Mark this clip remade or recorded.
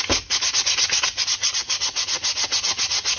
recorded